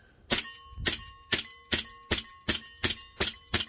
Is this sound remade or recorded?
recorded